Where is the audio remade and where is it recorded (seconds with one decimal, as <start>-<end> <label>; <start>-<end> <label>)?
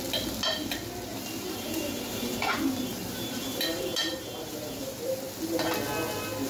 0.0-1.1 recorded; 1.1-5.0 remade; 5.0-6.5 recorded